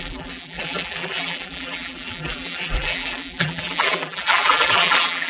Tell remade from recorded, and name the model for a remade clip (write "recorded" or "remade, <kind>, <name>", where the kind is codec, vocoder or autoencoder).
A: remade, vocoder, BigVGAN v2